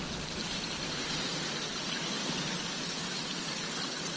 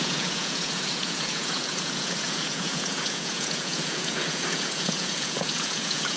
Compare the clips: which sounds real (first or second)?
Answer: first